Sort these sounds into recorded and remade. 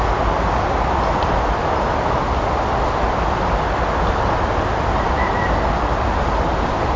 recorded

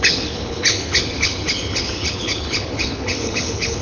remade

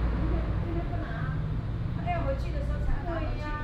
recorded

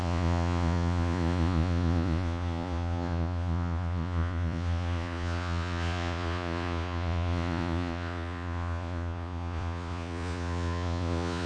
remade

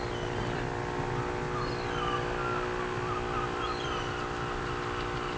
recorded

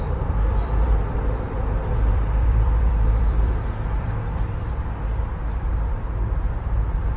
remade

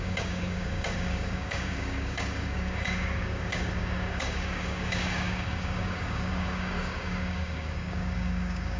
remade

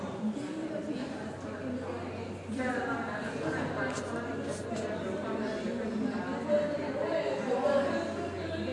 recorded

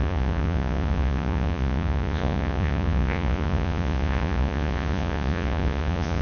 remade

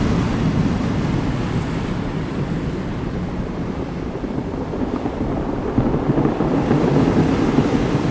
recorded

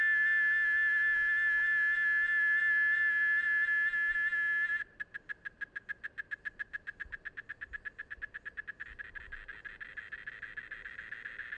recorded